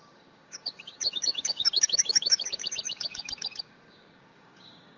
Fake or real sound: fake